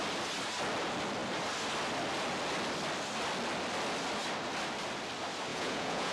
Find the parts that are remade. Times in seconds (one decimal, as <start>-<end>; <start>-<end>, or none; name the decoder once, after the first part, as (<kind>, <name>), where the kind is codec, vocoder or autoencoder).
5.5-6.1 (vocoder, Vocos)